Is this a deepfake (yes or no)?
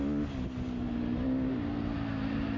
no